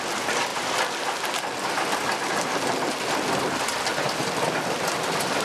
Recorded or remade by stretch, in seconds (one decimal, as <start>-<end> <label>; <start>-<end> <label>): 0.0-5.4 recorded